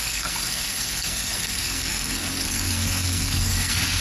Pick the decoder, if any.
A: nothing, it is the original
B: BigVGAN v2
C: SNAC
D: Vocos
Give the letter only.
C